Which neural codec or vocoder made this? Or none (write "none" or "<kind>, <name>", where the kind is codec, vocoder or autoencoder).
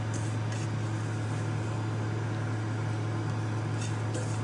none